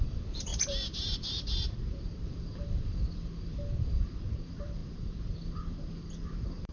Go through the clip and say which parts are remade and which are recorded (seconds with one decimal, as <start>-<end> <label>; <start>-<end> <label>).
0.0-6.7 remade